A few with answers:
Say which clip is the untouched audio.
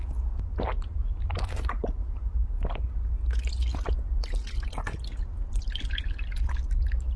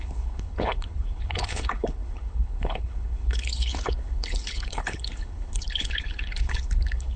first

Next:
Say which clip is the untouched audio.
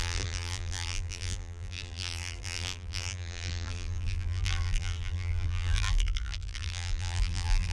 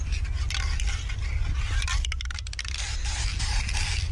second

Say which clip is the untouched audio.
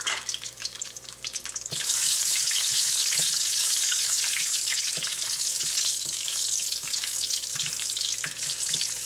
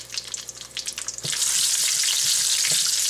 second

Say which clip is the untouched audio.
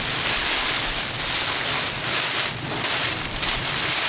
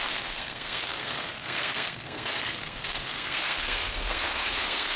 first